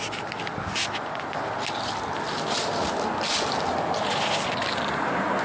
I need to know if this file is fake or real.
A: real